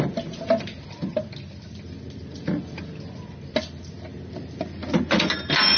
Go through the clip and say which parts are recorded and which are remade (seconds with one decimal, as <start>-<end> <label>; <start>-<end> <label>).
0.0-5.8 recorded